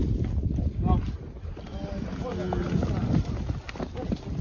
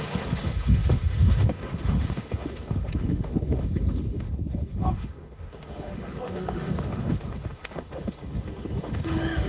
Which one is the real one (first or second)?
first